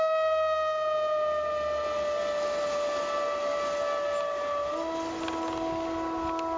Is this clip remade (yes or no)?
no